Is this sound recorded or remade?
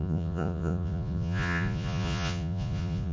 remade